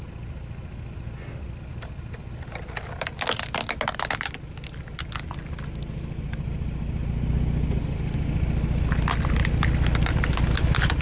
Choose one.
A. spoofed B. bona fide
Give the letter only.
B